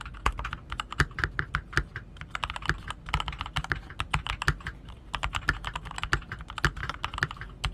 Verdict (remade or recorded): recorded